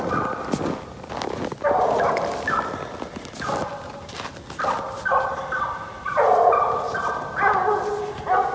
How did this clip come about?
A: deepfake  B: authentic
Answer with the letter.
B